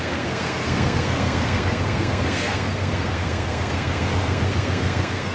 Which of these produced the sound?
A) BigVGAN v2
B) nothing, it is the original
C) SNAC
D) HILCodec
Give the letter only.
C